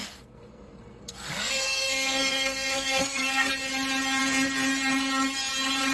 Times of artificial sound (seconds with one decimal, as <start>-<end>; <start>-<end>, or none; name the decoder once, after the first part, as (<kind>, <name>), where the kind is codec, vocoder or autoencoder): 0.0-3.5 (codec, SNAC)